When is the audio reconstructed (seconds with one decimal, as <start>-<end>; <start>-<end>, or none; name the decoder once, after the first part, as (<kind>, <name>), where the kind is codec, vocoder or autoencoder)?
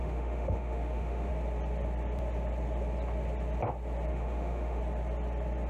0.0-1.3 (autoencoder, DAC-VAE); 4.1-4.8